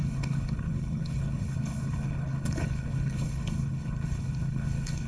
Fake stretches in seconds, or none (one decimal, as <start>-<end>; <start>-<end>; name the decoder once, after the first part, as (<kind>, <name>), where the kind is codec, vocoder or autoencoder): 0.0-5.1 (codec, HILCodec)